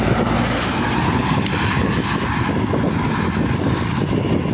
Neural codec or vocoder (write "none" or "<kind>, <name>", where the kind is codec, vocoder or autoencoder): none